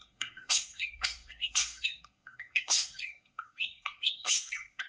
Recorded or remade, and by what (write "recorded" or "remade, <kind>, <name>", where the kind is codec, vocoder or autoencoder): remade, codec, SNAC